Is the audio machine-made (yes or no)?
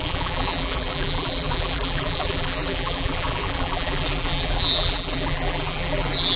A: yes